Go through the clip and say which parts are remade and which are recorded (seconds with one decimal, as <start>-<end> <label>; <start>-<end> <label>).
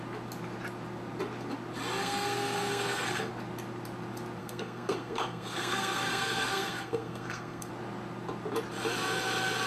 0.0-2.0 recorded; 2.0-3.3 remade; 3.3-4.4 recorded; 4.4-7.7 remade; 7.7-9.7 recorded